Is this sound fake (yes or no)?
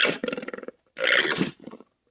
no